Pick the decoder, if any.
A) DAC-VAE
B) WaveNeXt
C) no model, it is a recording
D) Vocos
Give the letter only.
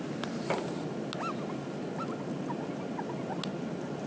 C